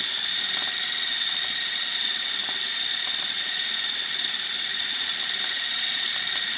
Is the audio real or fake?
real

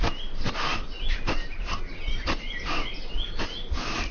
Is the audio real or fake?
real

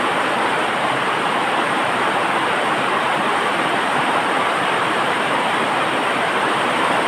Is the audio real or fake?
fake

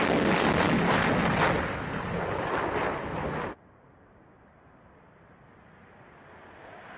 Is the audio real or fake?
real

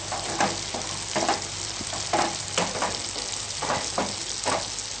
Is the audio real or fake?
real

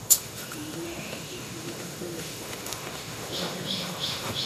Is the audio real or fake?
fake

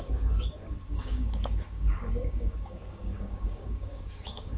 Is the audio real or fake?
fake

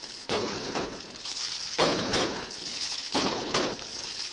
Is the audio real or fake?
fake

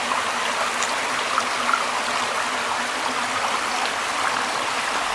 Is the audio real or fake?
real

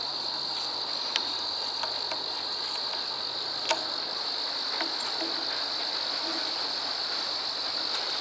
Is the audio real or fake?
real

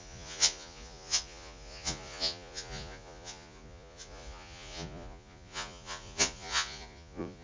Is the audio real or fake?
fake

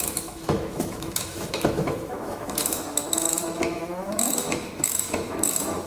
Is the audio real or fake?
fake